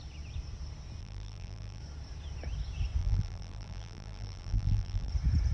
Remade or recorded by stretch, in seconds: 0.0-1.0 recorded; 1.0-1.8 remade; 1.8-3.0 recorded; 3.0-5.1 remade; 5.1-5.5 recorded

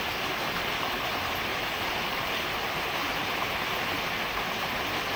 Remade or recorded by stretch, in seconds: 0.0-1.5 recorded; 1.5-2.7 remade; 2.7-5.2 recorded